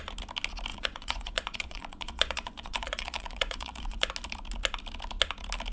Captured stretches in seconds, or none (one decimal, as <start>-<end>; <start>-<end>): 0.0-0.7; 4.1-5.7